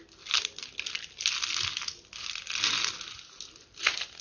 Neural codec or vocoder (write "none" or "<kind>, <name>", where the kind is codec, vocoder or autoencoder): none